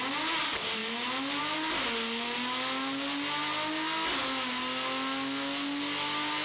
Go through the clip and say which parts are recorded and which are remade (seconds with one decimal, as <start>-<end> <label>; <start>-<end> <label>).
0.0-6.4 recorded